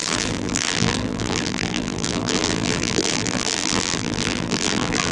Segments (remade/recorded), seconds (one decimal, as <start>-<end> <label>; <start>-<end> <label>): 0.0-5.1 remade